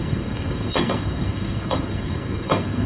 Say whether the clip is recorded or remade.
remade